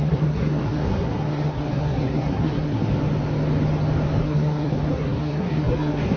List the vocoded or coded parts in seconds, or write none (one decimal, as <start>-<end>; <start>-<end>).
0.0-2.9; 4.2-6.2

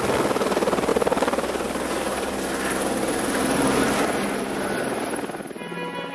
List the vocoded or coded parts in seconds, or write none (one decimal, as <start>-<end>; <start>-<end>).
none

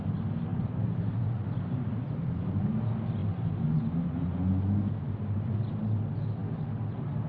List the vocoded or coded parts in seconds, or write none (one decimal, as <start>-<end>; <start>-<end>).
0.5-1.2

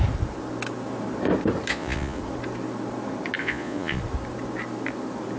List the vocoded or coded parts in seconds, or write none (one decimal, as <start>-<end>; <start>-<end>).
1.7-2.2; 3.4-4.0

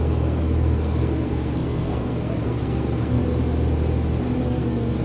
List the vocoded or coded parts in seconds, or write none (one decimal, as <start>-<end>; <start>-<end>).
0.0-3.2; 4.4-5.0

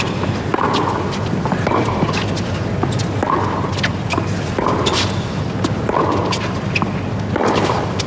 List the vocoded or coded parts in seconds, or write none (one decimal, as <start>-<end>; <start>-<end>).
none

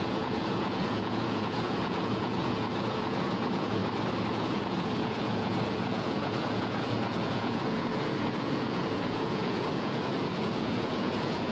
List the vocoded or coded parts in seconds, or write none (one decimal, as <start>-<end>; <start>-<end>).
0.0-3.8; 4.3-11.5